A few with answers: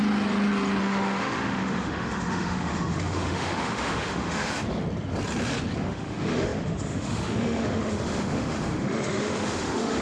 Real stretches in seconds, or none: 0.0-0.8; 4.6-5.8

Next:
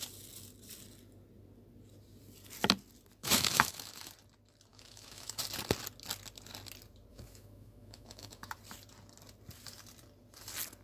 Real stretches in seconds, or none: 0.0-3.2; 4.1-4.7; 5.4-7.1; 8.5-10.8

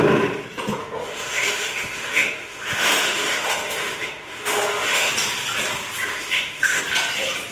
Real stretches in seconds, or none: 0.0-0.8; 5.1-6.1; 6.8-7.5

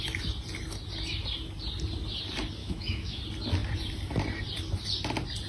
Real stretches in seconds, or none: 0.0-2.6; 3.2-5.5

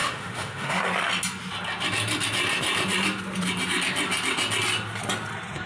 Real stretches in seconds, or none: 0.8-5.7

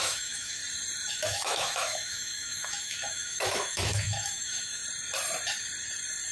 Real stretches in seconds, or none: 0.6-1.1; 4.8-6.3

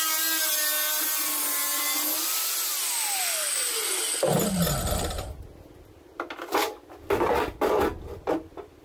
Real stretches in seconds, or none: 0.0-8.8